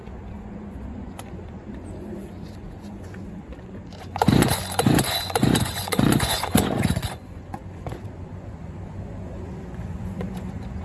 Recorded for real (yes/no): no